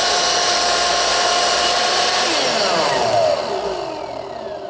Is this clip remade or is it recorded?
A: recorded